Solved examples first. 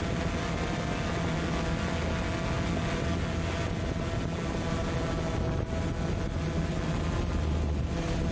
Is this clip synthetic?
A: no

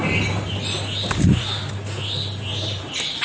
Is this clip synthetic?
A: no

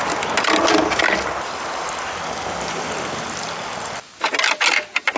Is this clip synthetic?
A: no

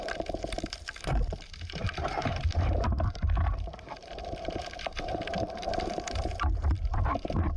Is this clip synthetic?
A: yes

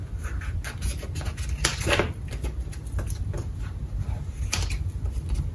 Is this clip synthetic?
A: no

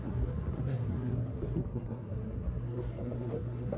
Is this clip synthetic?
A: yes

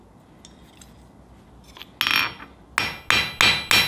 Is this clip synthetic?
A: no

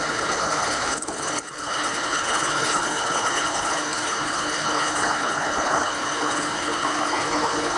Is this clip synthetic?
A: yes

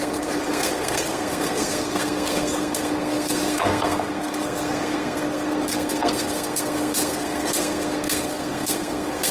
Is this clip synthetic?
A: yes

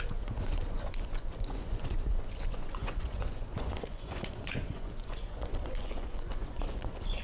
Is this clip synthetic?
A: yes